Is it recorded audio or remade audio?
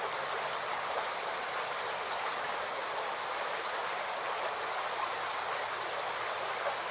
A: recorded